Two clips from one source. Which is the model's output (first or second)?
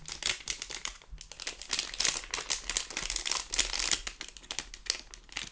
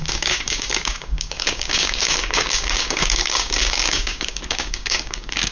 second